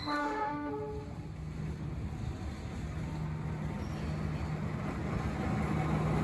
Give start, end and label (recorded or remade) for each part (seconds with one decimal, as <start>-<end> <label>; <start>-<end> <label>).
0.0-0.7 remade; 0.7-6.2 recorded